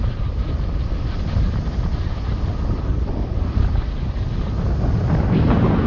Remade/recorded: recorded